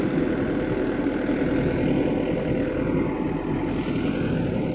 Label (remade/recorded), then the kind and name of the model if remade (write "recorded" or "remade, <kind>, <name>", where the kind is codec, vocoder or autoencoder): recorded